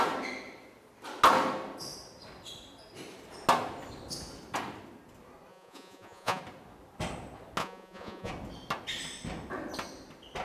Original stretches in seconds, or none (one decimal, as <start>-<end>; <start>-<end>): 0.0-5.5; 6.4-7.6; 8.3-10.4